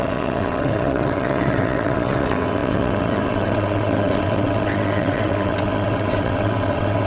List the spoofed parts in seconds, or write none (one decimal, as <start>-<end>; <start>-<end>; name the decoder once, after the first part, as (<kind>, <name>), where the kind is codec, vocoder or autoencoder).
0.0-7.1 (vocoder, WaveNeXt)